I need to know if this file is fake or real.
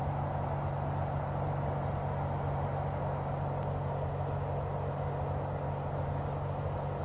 real